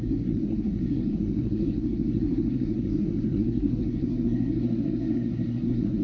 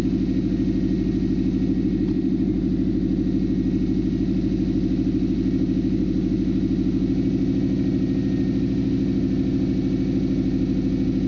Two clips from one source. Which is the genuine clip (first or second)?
second